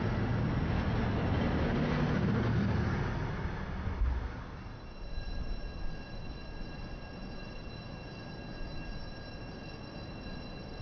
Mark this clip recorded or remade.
recorded